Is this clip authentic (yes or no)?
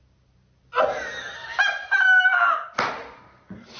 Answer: yes